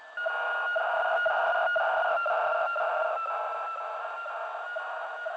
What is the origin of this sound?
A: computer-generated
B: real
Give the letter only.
B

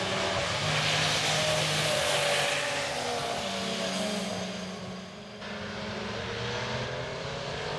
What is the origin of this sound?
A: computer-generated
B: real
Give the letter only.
B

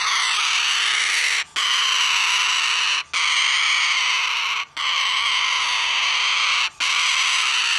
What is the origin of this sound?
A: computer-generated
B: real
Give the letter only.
B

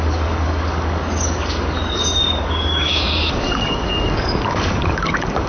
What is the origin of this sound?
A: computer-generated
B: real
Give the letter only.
A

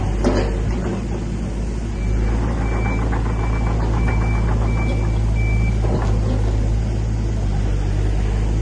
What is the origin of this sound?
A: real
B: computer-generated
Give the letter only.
A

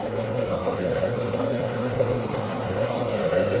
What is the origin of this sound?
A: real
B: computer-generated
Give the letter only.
B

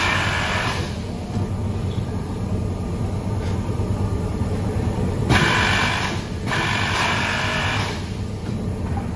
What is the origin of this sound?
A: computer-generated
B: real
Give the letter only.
A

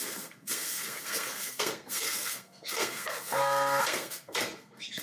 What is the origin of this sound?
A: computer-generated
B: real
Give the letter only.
A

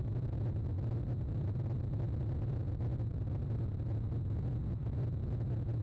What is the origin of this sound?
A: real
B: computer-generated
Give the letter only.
A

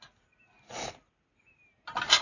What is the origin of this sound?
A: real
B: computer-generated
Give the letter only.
A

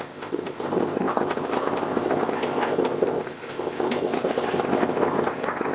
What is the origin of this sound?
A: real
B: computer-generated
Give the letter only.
B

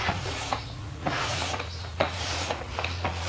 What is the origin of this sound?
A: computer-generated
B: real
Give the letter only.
A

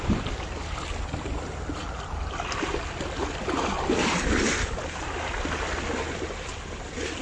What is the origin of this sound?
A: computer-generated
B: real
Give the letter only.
B